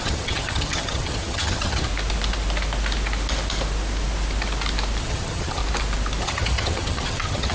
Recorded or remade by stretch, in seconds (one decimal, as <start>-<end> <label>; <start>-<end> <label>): 0.0-1.9 remade; 1.9-5.0 recorded; 5.0-5.6 remade; 5.6-6.2 recorded; 6.2-7.5 remade